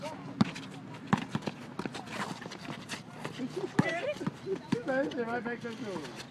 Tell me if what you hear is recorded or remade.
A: remade